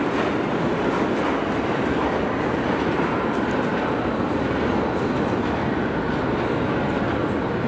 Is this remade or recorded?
recorded